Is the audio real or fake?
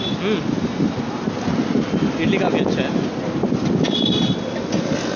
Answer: real